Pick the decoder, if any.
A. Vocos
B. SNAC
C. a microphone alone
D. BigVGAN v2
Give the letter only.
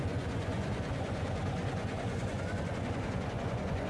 A